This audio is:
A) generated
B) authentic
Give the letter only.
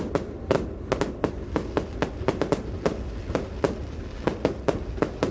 B